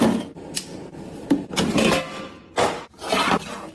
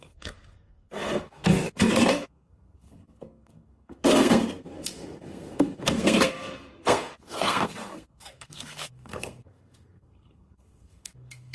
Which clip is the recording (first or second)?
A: first